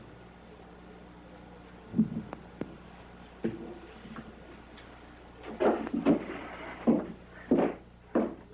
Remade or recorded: recorded